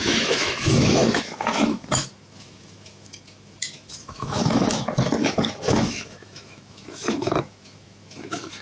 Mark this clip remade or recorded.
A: remade